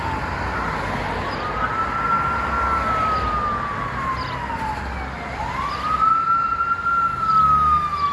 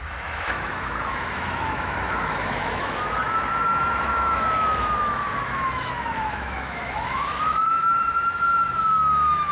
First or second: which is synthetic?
second